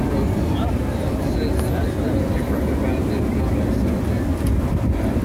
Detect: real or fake real